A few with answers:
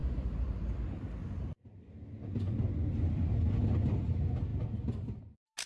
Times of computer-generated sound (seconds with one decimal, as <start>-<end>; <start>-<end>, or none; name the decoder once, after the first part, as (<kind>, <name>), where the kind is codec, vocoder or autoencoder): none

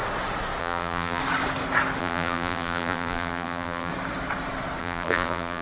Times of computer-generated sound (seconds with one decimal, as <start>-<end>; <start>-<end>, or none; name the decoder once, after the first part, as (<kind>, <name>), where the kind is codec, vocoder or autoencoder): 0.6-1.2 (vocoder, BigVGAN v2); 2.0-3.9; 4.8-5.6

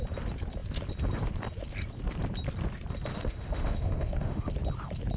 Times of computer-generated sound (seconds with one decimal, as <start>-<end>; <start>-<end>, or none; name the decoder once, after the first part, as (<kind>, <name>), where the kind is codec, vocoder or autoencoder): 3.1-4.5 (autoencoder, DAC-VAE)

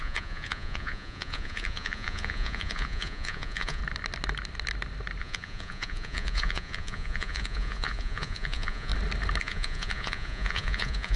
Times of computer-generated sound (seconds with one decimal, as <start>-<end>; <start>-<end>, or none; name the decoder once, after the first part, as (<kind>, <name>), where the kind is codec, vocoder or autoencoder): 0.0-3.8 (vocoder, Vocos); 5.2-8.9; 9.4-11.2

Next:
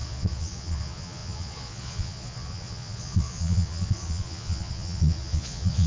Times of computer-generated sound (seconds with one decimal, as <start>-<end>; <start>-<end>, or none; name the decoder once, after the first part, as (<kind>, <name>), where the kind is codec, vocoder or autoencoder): 0.0-5.9 (vocoder, Vocos)

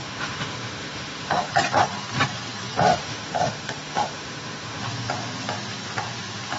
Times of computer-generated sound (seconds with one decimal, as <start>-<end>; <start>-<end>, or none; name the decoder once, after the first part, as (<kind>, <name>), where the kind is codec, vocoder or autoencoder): 0.0-1.5 (autoencoder, DAC-VAE); 2.9-4.8

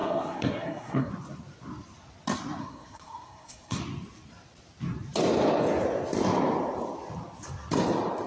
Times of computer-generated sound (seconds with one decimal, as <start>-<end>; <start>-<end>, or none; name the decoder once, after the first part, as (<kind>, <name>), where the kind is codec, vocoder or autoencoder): 0.0-1.1 (codec, SNAC); 2.6-3.8